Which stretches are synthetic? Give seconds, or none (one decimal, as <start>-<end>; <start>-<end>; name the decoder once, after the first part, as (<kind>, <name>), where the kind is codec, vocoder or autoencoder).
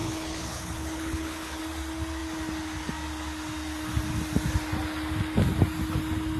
0.0-1.6 (codec, HILCodec)